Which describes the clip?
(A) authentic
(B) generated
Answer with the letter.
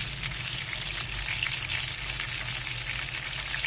A